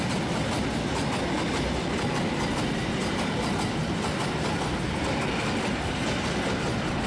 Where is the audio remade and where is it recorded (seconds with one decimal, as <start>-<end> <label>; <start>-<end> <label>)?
0.0-3.0 recorded; 3.0-3.5 remade; 3.5-7.1 recorded